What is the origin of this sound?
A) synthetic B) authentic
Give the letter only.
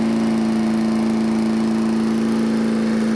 B